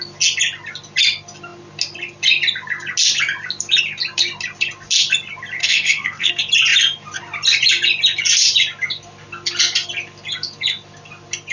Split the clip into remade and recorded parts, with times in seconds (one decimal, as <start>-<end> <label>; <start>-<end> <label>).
0.0-5.6 recorded; 5.6-6.3 remade; 6.3-11.5 recorded